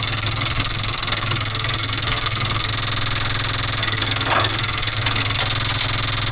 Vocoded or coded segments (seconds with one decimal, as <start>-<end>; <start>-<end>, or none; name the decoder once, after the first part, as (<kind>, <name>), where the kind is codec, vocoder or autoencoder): 0.0-2.7 (codec, SNAC); 3.8-5.4